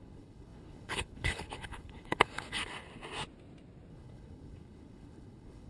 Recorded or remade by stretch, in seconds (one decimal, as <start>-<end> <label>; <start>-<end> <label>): 0.0-2.6 remade; 2.6-3.9 recorded; 3.9-5.7 remade